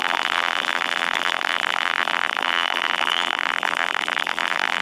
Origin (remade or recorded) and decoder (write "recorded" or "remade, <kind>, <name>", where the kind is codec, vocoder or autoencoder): remade, vocoder, BigVGAN v2